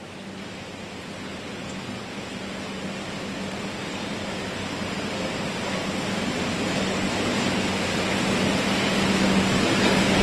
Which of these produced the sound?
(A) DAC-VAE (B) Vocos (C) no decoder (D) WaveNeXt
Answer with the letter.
C